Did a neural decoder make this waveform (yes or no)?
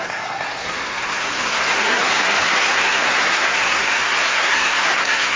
yes